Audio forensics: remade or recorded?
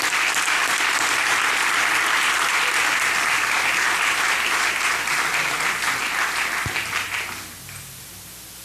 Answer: recorded